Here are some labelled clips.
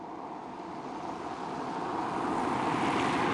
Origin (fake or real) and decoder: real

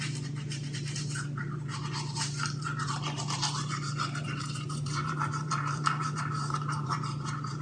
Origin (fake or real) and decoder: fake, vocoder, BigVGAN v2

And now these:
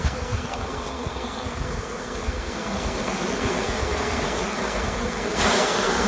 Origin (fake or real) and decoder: fake, codec, SNAC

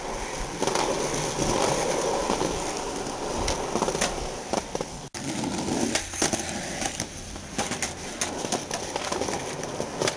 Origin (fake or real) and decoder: real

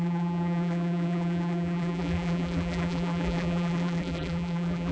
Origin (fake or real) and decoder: fake, vocoder, BigVGAN v2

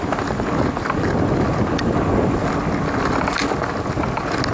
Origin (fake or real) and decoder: real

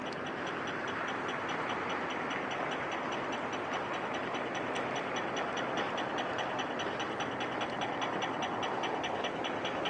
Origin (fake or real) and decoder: real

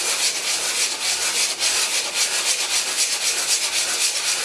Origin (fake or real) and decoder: real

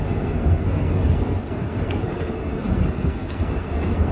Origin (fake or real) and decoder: fake, codec, SNAC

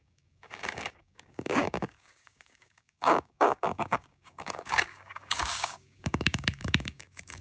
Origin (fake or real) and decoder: fake, codec, DAC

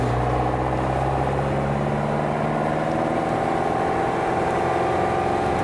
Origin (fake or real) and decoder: real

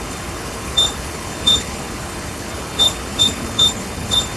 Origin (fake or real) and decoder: fake, codec, HILCodec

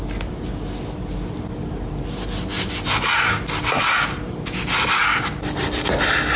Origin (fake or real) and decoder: real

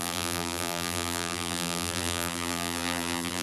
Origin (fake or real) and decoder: fake, vocoder, BigVGAN v2